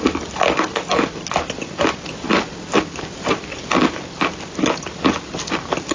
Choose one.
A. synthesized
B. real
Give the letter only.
B